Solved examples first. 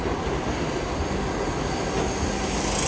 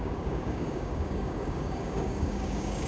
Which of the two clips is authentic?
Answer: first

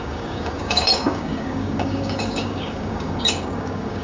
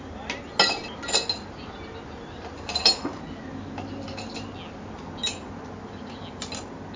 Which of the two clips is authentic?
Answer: second